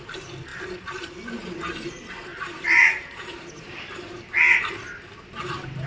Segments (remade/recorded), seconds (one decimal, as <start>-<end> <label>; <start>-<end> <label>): 0.0-0.5 recorded; 0.5-1.1 remade; 1.1-2.3 recorded; 2.3-4.3 remade; 4.3-5.9 recorded